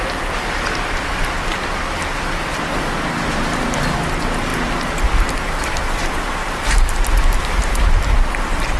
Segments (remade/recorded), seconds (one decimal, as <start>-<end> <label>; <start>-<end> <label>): 0.0-8.8 recorded